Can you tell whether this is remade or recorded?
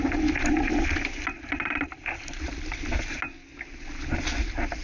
recorded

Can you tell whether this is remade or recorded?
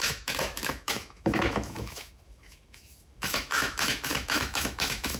remade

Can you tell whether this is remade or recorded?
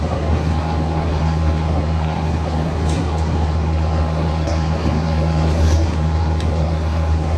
remade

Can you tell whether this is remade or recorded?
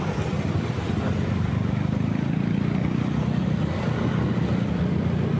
remade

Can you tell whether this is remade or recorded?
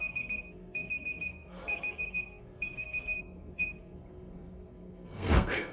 remade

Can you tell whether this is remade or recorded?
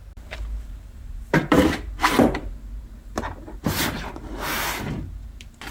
remade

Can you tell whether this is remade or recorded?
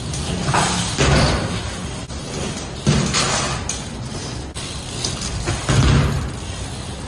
recorded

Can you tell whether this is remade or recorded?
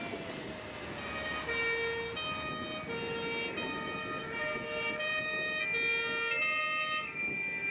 recorded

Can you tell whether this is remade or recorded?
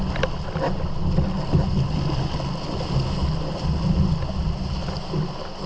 recorded